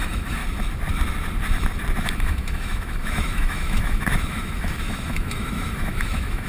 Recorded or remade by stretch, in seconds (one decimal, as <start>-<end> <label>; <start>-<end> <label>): 0.0-0.4 remade; 0.4-2.0 recorded; 2.0-6.5 remade